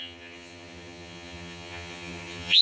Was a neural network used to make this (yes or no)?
yes